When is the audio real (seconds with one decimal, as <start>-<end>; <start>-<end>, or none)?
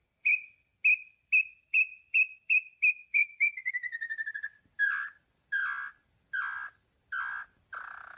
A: 0.7-1.4